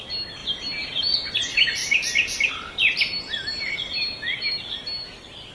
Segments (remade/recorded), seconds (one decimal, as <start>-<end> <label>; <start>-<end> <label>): 0.0-5.5 recorded